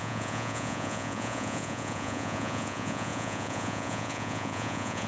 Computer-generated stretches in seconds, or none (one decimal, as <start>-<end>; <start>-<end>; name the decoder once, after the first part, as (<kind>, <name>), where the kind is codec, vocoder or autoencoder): 0.0-5.1 (vocoder, Vocos)